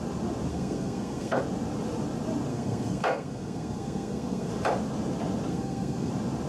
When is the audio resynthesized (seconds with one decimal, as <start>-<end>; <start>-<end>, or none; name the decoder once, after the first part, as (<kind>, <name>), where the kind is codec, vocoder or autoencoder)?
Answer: 0.5-1.4 (codec, SNAC); 2.5-4.5; 5.5-6.1